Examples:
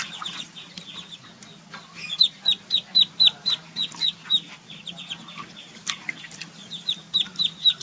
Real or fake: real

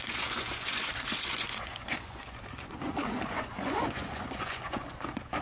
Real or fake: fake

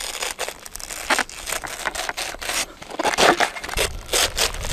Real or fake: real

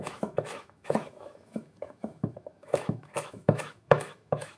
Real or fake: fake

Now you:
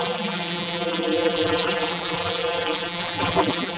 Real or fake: fake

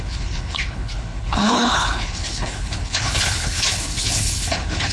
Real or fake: fake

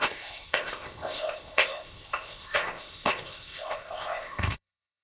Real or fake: fake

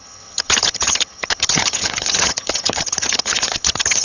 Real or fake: fake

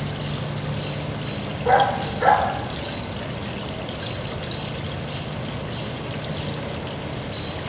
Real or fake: real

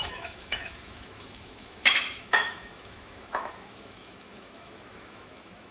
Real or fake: fake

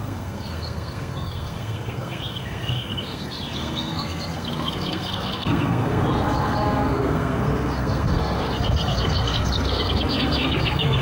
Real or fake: fake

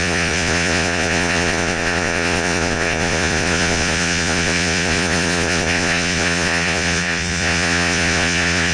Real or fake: fake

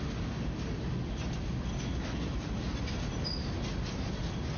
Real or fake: real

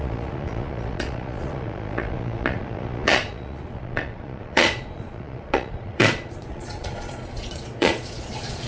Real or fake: fake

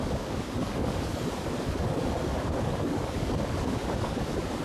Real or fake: fake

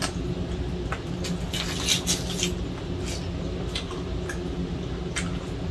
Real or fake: real